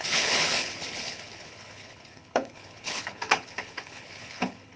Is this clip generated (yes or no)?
yes